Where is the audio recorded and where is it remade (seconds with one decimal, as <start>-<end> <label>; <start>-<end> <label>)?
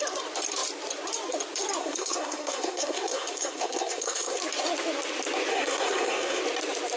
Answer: 0.0-1.8 recorded; 1.8-4.4 remade; 4.4-5.5 recorded; 5.5-6.4 remade; 6.4-7.0 recorded